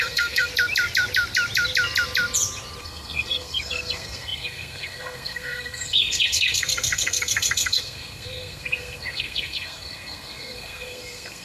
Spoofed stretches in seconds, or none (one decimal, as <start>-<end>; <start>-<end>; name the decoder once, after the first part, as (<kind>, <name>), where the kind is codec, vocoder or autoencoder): 0.0-0.5 (codec, SNAC); 2.8-11.4